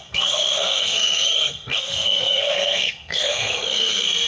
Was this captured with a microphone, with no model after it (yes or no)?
no